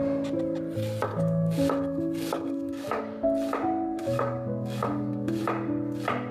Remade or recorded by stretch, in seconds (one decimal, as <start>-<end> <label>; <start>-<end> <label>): 0.0-1.1 recorded; 1.1-3.0 remade; 3.0-4.0 recorded; 4.0-5.4 remade; 5.4-6.3 recorded